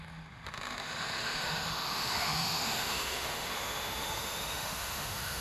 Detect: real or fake fake